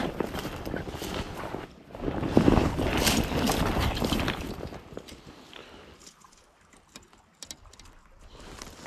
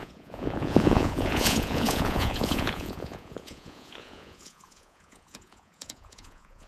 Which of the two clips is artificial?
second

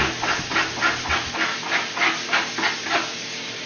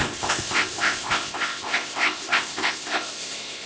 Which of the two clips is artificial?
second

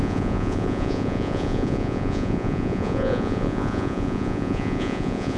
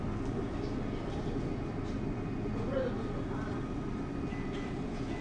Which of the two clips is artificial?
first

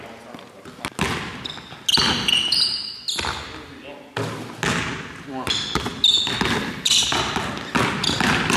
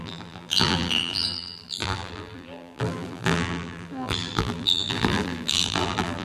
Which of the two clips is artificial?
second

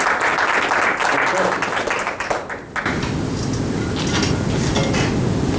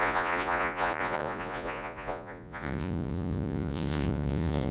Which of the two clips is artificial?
second